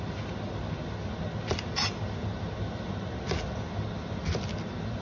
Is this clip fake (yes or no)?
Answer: no